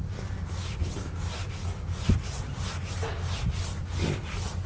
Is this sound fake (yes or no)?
no